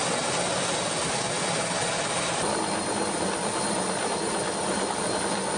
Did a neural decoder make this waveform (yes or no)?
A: no